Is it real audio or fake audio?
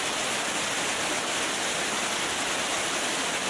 real